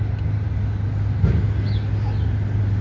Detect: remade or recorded recorded